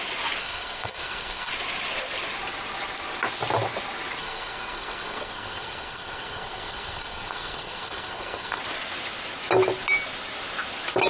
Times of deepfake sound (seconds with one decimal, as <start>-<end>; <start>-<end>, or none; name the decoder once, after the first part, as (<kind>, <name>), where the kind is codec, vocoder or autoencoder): 0.4-1.5 (codec, SNAC); 4.2-8.6